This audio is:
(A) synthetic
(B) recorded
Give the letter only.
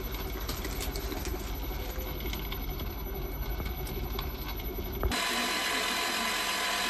B